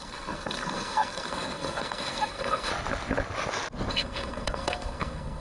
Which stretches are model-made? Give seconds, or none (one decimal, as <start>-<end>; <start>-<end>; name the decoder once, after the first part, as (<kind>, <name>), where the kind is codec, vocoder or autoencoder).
0.0-2.7 (codec, SNAC); 3.9-5.4

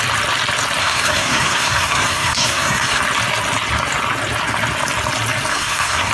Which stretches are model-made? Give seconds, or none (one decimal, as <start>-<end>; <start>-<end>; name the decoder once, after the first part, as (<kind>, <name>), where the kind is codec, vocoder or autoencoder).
0.8-3.0 (codec, SNAC); 5.5-6.1

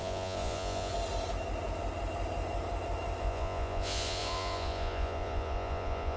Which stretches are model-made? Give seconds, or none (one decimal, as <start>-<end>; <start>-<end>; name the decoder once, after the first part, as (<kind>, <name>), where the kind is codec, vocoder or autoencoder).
0.0-0.9 (vocoder, Vocos); 3.2-6.2